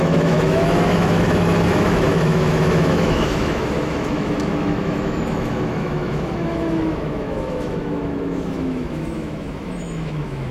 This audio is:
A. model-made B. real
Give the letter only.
A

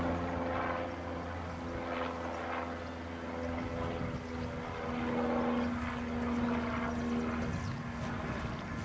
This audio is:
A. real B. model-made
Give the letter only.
A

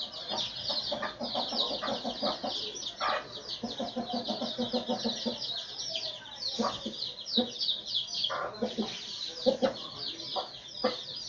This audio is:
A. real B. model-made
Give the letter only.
A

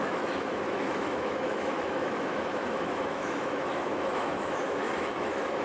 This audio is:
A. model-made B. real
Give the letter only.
A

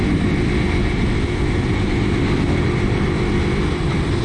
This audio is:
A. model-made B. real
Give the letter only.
B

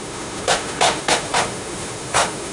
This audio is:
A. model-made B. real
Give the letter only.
A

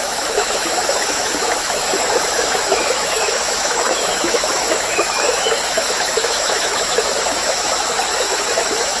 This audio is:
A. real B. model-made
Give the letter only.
B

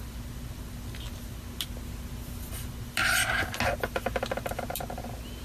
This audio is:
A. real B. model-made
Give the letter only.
A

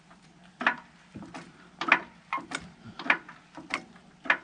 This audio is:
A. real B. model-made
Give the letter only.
A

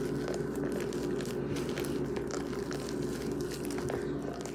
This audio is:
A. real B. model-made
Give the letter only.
A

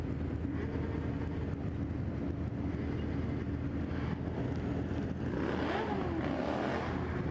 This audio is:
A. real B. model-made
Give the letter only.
A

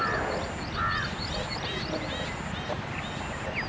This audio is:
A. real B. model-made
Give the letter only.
A